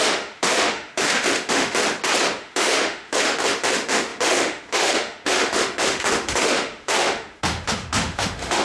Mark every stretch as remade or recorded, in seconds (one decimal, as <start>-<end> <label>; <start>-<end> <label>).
0.0-1.8 remade; 1.8-2.4 recorded; 2.4-8.6 remade